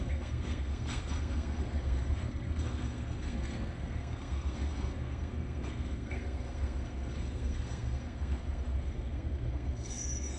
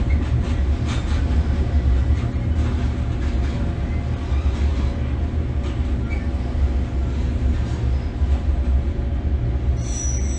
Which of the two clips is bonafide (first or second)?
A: second